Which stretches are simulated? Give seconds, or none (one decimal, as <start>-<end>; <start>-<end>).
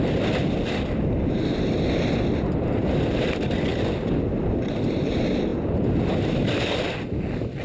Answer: none